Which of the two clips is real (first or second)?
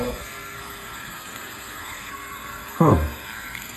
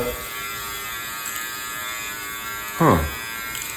second